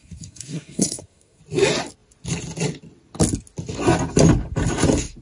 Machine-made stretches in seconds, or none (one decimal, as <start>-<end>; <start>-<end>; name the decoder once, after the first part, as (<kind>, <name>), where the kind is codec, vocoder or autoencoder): 0.0-1.4 (codec, SNAC)